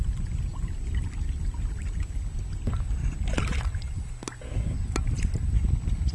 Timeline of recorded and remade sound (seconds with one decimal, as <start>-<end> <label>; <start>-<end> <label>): 0.0-6.1 recorded